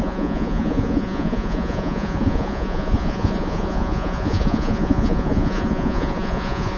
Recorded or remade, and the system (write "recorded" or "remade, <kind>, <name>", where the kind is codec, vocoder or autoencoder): remade, vocoder, Vocos